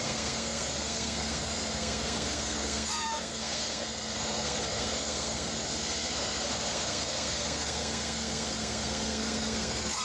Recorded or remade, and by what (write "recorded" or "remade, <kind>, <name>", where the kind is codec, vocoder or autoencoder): remade, codec, SNAC